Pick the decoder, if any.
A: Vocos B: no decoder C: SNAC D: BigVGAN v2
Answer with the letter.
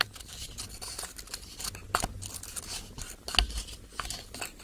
B